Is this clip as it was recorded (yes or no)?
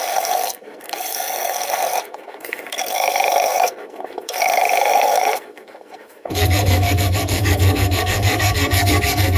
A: no